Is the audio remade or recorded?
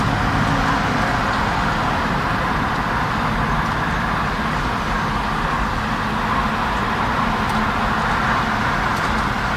recorded